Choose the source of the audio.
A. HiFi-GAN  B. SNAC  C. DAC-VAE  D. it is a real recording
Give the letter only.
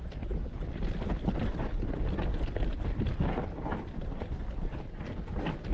D